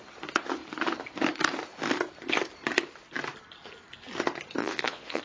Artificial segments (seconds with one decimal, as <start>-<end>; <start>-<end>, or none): 4.6-5.2